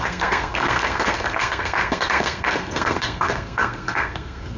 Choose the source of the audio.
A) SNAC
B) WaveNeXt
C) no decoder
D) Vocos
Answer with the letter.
A